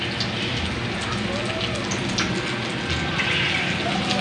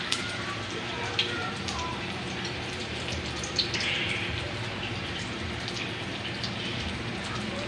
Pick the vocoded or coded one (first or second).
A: second